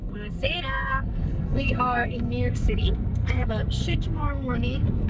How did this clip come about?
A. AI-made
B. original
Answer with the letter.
A